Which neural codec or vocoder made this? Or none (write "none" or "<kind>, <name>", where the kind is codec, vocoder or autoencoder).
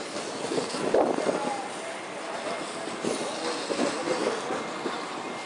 none